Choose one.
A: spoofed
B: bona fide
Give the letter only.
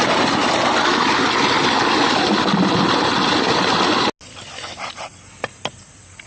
B